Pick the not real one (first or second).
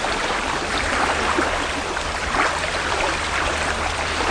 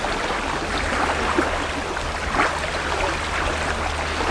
first